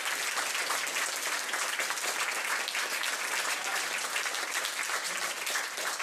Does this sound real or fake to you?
real